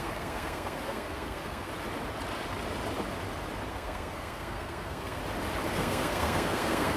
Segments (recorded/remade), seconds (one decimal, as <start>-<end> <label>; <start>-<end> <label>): 0.0-1.7 remade; 1.7-3.7 recorded; 3.7-5.2 remade; 5.2-5.7 recorded; 5.7-7.0 remade